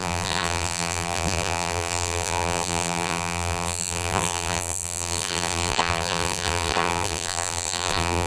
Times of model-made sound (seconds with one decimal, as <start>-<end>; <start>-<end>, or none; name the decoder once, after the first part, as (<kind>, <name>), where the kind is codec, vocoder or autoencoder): 0.0-8.3 (vocoder, BigVGAN v2)